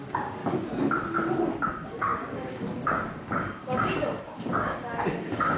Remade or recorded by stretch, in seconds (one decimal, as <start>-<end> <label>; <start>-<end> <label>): 0.0-0.4 remade; 0.4-1.7 recorded; 1.7-5.6 remade